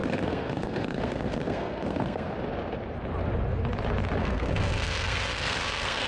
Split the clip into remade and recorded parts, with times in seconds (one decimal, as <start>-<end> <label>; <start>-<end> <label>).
0.0-2.3 remade; 2.3-4.2 recorded; 4.2-6.1 remade